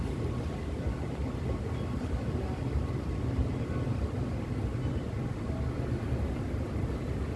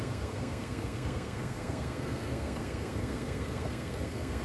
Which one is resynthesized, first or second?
second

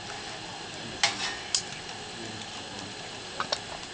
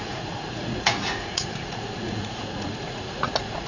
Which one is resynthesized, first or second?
second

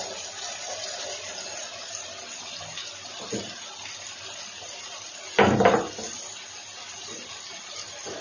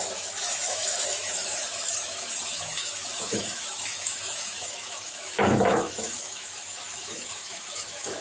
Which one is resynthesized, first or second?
second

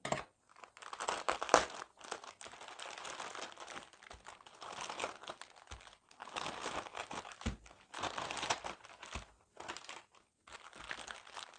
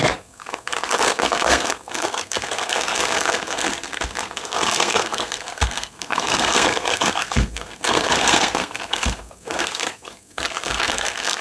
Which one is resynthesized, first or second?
second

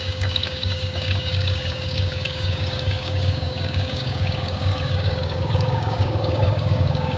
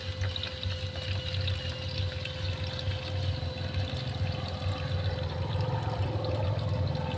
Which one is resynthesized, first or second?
first